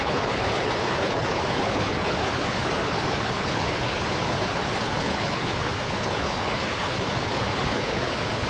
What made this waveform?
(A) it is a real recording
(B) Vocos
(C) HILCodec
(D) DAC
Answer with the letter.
C